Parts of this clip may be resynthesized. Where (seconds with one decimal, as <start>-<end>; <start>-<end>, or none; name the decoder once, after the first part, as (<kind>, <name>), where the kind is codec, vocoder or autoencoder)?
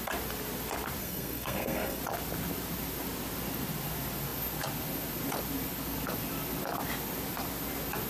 1.0-2.0 (codec, SNAC)